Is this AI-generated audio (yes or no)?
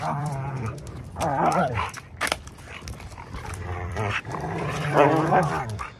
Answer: yes